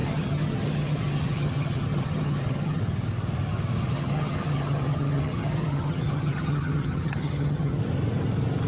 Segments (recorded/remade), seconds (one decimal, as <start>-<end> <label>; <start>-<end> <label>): 0.0-2.8 remade; 2.8-3.9 recorded; 3.9-7.8 remade; 7.8-8.7 recorded